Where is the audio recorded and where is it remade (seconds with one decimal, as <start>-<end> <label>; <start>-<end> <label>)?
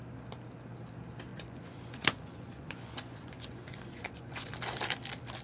0.0-1.3 recorded; 1.3-4.5 remade; 4.5-5.4 recorded